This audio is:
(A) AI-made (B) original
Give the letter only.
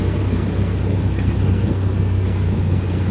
A